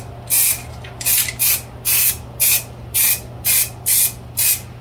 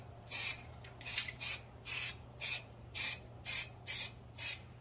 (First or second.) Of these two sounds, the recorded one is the first